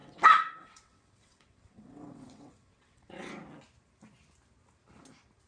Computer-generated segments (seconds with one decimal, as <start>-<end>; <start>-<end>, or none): 0.0-3.3